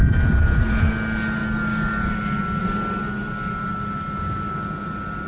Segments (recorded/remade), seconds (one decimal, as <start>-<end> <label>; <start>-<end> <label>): 0.0-0.9 remade; 0.9-5.3 recorded